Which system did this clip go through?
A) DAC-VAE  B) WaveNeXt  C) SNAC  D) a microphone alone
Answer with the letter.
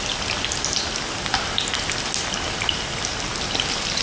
D